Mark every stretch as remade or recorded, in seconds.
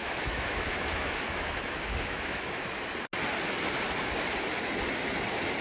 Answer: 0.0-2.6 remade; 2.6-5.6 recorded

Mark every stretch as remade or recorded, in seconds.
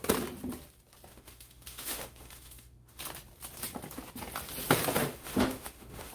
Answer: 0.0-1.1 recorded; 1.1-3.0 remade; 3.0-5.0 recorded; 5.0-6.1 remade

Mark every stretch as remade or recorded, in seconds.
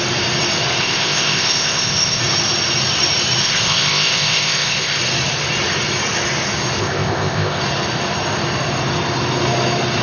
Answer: 0.0-0.8 recorded; 0.8-2.2 remade; 2.2-3.4 recorded; 3.4-5.0 remade; 5.0-6.8 recorded; 6.8-7.6 remade; 7.6-10.0 recorded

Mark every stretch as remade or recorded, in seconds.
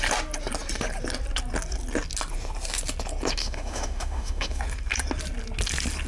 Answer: 0.0-3.4 recorded; 3.4-4.6 remade; 4.6-6.1 recorded